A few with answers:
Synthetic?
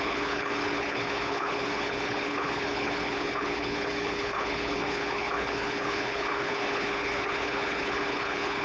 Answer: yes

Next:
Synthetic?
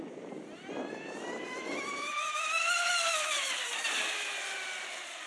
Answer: no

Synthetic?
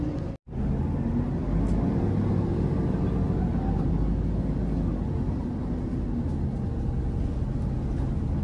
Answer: no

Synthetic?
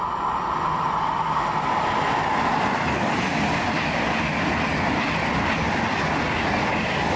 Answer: no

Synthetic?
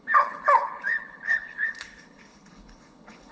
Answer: yes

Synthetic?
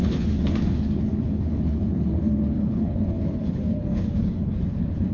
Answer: yes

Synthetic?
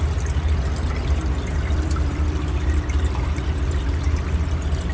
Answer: no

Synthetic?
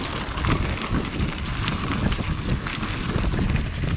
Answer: no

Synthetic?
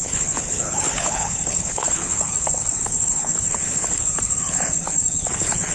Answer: yes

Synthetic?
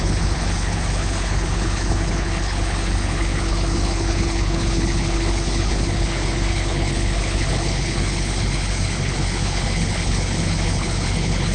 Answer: yes